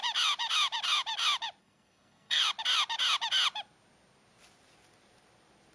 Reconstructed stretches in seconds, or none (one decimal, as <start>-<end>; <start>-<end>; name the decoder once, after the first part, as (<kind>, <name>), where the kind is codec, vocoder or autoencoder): 1.6-2.4 (codec, SNAC)